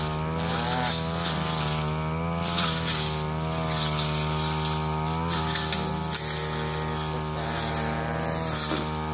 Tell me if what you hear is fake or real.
real